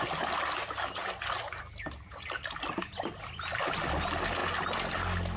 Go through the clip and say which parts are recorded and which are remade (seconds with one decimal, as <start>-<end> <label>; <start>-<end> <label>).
0.0-5.4 recorded